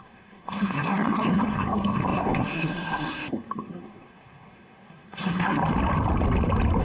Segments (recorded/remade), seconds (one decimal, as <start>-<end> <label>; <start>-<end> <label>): 0.0-5.6 remade; 5.6-6.8 recorded